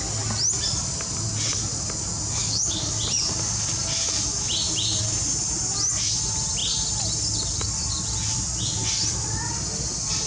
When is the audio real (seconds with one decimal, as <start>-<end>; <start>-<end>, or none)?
0.0-2.4; 2.9-10.3